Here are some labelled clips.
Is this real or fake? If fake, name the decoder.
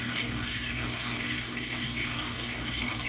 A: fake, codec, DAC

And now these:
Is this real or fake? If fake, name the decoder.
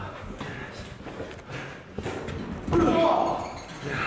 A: real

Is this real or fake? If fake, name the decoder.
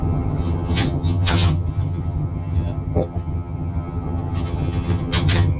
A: fake, vocoder, HiFi-GAN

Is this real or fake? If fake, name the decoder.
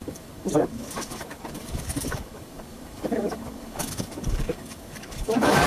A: fake, codec, DAC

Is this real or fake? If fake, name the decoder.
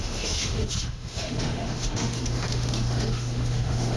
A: fake, autoencoder, DAC-VAE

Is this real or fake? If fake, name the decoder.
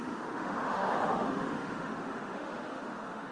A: fake, autoencoder, DAC-VAE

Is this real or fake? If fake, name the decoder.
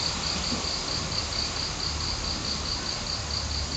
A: real